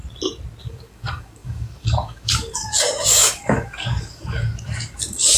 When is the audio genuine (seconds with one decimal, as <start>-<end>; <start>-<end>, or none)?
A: 0.0-0.6